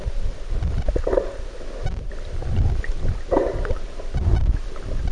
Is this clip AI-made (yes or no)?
yes